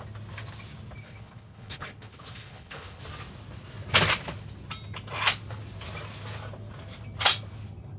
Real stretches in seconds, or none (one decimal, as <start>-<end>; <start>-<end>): 0.0-1.0; 3.0-8.0